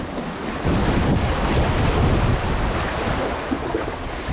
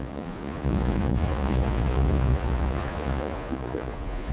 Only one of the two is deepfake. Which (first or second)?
second